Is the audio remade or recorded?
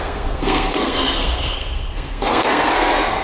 remade